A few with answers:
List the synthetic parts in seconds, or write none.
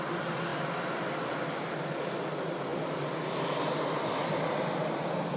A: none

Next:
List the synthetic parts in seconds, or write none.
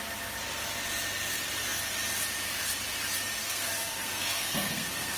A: 3.4-5.2 (codec, SNAC)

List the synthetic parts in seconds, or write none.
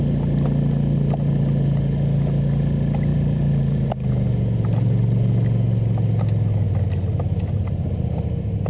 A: 3.1-3.9 (vocoder, BigVGAN v2)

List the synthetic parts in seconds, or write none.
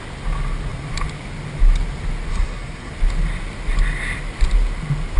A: 2.3-2.9 (codec, SNAC)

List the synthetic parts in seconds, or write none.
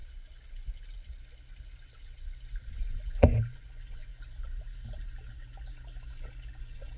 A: 2.7-4.1 (vocoder, Vocos); 6.6-7.0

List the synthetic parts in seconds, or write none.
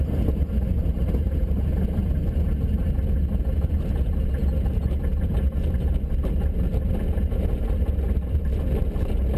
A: none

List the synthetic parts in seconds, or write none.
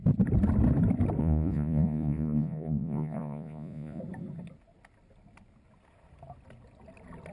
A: 1.2-4.0 (vocoder, Vocos)